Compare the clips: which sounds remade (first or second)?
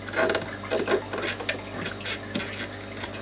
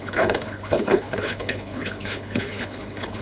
second